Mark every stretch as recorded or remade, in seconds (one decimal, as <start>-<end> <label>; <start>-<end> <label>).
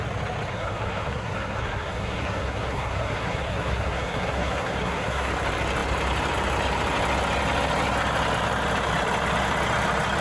0.0-0.5 recorded; 0.5-5.3 remade; 5.3-10.2 recorded